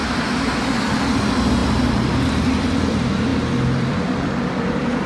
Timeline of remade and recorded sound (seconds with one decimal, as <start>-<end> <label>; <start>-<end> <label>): 0.0-0.9 remade; 0.9-3.3 recorded; 3.3-5.1 remade